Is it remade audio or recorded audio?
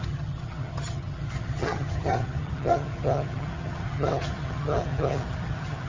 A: remade